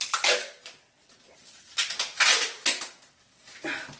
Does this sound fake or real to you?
real